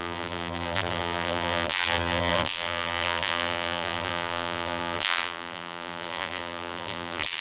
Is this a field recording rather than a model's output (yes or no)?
no